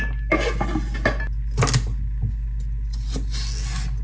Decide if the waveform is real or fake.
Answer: real